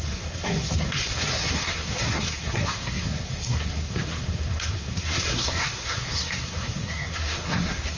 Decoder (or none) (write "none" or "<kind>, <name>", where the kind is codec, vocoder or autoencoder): codec, SNAC